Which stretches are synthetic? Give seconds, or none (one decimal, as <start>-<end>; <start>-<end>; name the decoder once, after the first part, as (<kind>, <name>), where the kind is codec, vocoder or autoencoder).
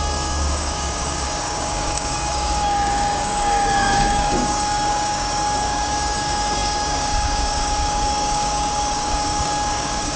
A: 0.0-10.2 (codec, DAC)